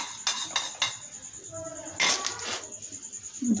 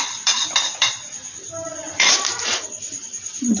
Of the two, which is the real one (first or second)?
first